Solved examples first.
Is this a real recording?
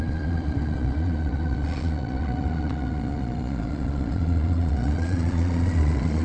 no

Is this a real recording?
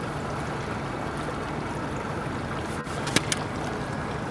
yes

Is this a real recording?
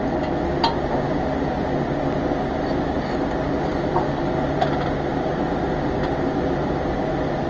yes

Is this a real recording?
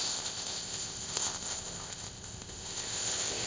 no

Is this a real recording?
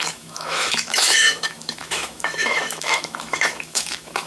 no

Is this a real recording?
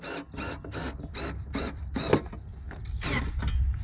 yes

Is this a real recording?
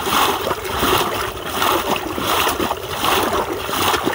yes